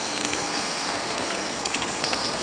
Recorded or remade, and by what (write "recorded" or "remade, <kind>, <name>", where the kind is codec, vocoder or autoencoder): remade, codec, SNAC